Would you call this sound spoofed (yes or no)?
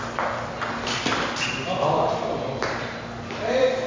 no